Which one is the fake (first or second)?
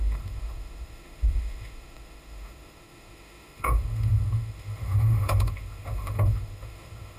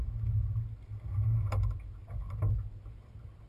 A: first